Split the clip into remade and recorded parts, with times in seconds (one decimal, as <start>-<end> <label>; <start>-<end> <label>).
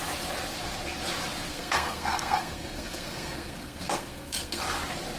0.0-1.5 recorded; 1.5-4.6 remade; 4.6-5.2 recorded